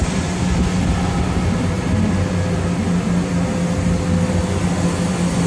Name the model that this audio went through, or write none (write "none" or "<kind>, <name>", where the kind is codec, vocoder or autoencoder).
none